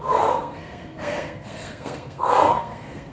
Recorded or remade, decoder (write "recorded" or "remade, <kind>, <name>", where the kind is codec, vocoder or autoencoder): remade, codec, SNAC